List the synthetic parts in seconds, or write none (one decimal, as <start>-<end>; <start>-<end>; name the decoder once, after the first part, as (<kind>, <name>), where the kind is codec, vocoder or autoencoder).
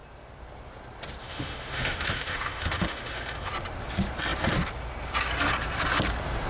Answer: 1.2-3.5 (autoencoder, DAC-VAE)